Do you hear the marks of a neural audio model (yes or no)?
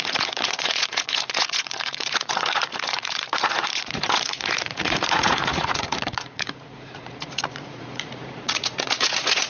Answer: yes